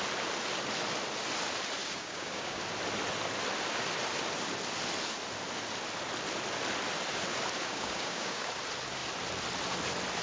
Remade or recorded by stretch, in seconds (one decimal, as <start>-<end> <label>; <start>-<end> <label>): 0.0-1.8 recorded; 1.8-2.6 remade; 2.6-7.7 recorded; 7.7-8.5 remade; 8.5-10.2 recorded